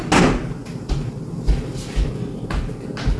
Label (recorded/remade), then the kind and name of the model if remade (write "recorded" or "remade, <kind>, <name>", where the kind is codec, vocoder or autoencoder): recorded